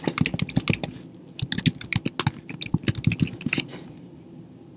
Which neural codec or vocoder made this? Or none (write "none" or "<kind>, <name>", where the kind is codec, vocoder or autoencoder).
none